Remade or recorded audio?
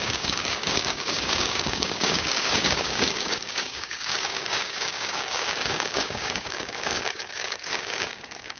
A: remade